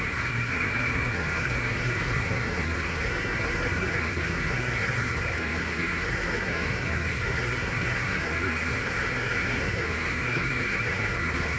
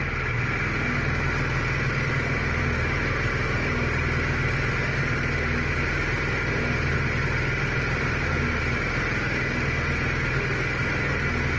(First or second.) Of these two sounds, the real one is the second